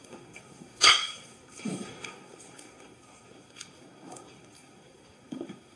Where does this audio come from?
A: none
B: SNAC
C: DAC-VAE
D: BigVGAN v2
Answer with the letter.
B